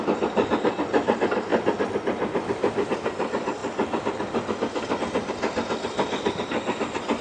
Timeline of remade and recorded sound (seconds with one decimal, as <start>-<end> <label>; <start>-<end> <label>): 0.0-7.2 recorded